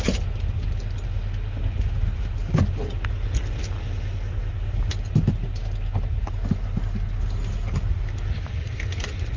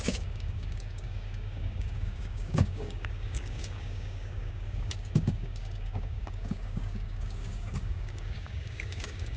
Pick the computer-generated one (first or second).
second